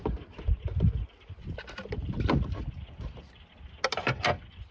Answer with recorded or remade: recorded